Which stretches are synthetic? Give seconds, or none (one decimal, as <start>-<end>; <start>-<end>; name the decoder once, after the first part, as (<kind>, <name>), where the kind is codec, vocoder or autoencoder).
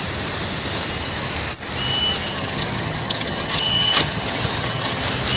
2.2-5.0 (vocoder, HiFi-GAN)